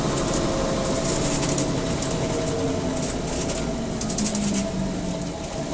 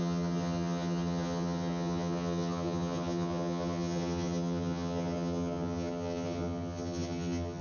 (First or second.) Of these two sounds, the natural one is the first